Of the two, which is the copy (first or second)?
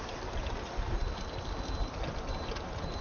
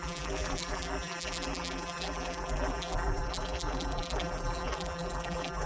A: second